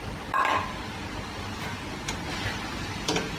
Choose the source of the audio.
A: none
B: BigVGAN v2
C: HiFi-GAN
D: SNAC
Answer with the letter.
A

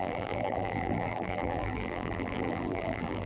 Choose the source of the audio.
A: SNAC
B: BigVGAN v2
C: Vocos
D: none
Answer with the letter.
B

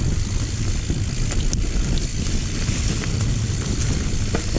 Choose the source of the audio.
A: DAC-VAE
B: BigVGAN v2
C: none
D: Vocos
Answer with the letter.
C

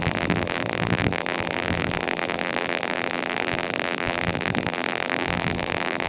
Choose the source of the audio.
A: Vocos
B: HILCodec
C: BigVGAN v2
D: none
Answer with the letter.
C